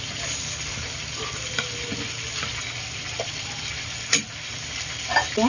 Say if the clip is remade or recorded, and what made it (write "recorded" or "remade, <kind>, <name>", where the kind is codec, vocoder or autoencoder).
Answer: recorded